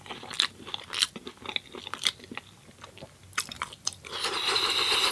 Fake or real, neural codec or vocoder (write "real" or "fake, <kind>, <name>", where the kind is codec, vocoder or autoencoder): real